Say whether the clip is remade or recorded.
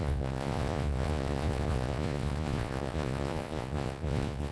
remade